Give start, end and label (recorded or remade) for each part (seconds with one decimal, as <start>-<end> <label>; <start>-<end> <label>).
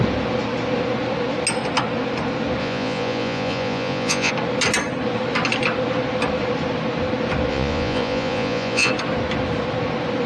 0.0-2.6 recorded; 2.6-4.3 remade; 4.3-7.5 recorded; 7.5-8.9 remade; 8.9-10.3 recorded